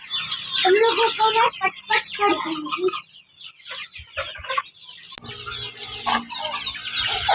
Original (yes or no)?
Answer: yes